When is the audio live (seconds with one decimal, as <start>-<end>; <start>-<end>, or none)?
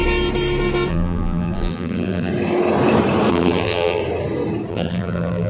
0.0-0.9; 2.3-3.3; 4.0-4.7